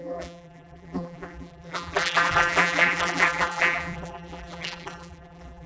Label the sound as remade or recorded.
remade